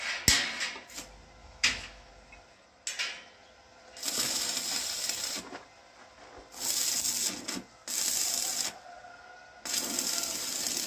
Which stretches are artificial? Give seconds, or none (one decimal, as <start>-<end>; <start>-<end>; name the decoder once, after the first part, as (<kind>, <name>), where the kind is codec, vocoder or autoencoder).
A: 1.4-2.1 (autoencoder, DAC-VAE)

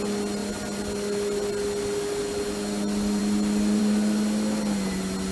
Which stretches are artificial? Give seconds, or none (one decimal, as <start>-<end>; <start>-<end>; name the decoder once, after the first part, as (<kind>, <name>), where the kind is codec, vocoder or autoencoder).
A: none

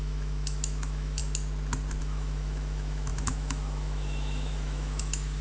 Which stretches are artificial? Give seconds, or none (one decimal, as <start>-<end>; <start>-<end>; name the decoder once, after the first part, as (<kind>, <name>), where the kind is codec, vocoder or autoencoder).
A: 0.0-1.2 (autoencoder, DAC-VAE); 2.0-5.4

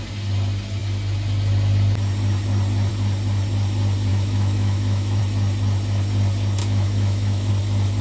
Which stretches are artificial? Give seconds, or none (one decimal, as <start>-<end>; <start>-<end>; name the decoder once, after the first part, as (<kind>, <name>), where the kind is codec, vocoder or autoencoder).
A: 4.1-5.2 (autoencoder, DAC-VAE); 6.6-7.5

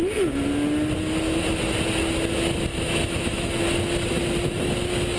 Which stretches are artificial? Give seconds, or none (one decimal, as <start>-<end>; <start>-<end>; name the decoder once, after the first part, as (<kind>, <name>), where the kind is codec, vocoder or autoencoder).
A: 2.7-3.6 (autoencoder, DAC-VAE)